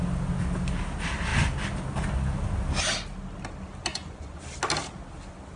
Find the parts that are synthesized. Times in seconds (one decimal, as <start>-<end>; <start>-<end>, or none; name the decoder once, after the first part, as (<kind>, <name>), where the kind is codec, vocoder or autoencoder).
3.9-4.4 (vocoder, Vocos)

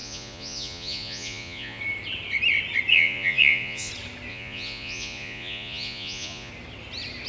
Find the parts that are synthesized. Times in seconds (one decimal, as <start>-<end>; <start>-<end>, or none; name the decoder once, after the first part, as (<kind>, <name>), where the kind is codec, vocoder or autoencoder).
0.0-1.8 (vocoder, Vocos); 2.9-3.9; 4.3-6.5

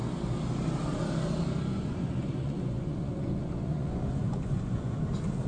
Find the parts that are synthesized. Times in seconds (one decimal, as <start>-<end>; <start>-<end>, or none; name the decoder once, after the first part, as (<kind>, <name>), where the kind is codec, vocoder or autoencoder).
1.7-5.0 (vocoder, Vocos)

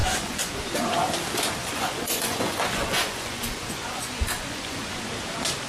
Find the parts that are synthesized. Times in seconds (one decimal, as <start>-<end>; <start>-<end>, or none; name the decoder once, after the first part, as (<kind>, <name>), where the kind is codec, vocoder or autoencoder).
0.0-0.6 (vocoder, Vocos); 1.6-5.0

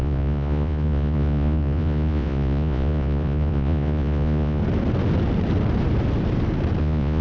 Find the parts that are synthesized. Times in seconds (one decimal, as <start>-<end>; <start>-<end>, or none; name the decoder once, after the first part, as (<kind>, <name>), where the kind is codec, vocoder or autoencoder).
0.0-4.6 (vocoder, Vocos); 6.8-7.2